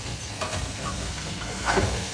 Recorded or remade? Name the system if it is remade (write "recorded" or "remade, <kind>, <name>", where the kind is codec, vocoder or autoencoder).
remade, codec, SNAC